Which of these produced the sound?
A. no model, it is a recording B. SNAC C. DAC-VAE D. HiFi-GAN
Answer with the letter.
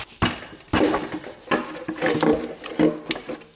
A